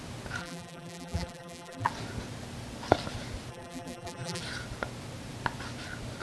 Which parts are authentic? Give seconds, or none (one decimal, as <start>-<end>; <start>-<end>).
0.0-0.4; 1.9-3.5; 4.4-6.2